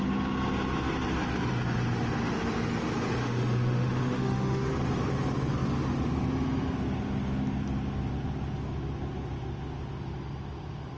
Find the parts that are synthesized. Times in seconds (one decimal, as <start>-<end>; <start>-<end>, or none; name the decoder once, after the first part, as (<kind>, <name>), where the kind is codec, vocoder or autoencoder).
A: 3.2-4.7 (autoencoder, DAC-VAE)